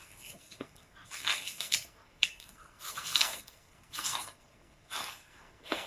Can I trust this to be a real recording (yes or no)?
no